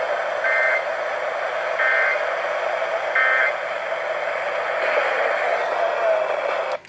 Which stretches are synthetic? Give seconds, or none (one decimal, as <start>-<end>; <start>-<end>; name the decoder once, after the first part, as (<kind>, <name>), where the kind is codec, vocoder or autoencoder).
none